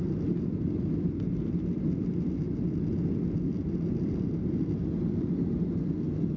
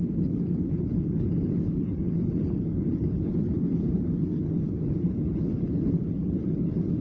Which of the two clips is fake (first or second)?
second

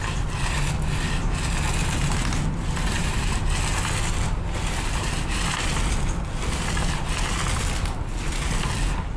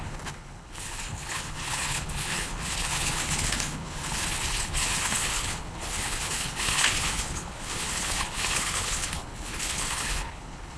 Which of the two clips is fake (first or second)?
second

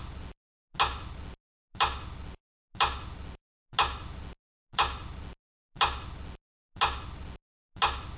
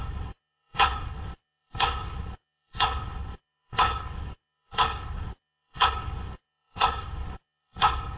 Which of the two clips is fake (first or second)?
second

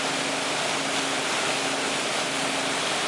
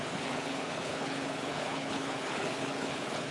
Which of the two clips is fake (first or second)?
second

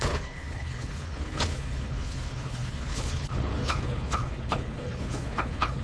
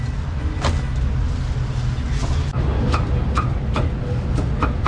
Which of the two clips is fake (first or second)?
first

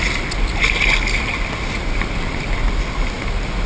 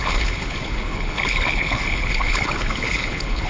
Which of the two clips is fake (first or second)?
second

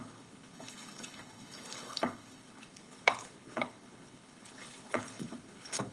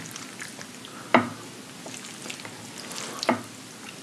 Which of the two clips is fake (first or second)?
first